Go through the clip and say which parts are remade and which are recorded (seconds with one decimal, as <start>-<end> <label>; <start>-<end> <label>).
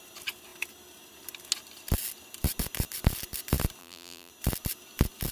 0.0-3.8 recorded; 3.8-4.3 remade; 4.3-5.3 recorded